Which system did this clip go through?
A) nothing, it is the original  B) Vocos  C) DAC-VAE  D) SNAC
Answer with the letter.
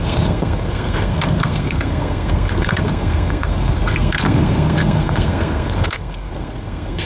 D